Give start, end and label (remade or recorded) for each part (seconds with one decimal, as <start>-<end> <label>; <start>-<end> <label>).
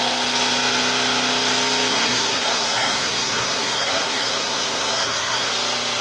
0.0-1.9 recorded; 1.9-5.5 remade; 5.5-6.0 recorded